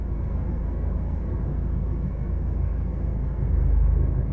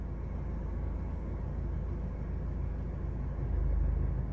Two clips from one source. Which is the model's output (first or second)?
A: first